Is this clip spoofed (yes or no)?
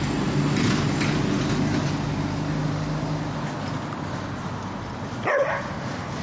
no